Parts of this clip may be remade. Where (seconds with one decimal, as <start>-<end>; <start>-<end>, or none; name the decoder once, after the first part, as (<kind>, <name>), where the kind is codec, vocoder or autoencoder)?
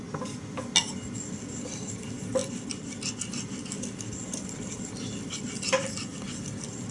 none